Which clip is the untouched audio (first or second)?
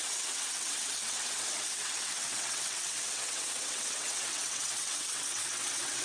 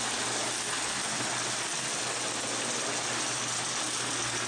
second